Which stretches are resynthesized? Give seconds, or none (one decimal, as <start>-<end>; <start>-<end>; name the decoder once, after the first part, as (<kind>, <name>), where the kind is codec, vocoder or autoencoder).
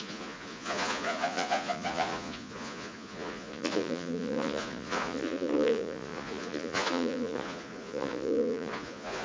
0.0-9.2 (vocoder, Vocos)